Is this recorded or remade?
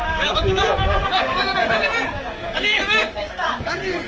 remade